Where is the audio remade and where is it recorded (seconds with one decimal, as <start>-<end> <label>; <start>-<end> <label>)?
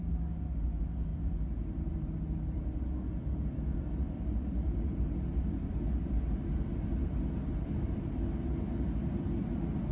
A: 0.0-1.1 recorded; 1.1-5.8 remade; 5.8-9.9 recorded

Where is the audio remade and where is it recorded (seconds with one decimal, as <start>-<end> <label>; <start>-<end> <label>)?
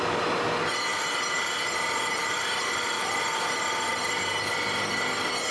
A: 0.0-0.9 recorded; 0.9-4.2 remade; 4.2-5.5 recorded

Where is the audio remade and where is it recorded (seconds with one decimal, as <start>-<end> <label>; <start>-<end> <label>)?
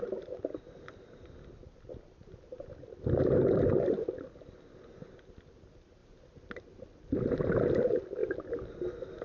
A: 0.0-1.6 recorded; 1.6-3.7 remade; 3.7-6.0 recorded; 6.0-7.4 remade; 7.4-9.2 recorded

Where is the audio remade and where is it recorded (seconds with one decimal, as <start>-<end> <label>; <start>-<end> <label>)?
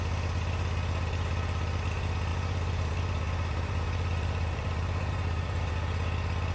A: 0.0-2.3 recorded; 2.3-5.7 remade; 5.7-6.5 recorded